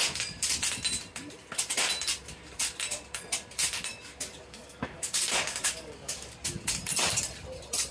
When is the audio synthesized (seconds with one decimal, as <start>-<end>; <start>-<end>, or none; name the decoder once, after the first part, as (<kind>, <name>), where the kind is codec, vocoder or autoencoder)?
3.9-6.4 (codec, DAC)